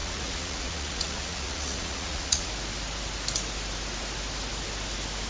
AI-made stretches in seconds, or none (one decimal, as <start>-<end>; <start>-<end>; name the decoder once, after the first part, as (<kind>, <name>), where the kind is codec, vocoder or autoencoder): 0.0-2.5 (vocoder, Vocos)